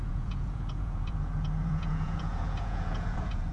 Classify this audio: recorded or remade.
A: remade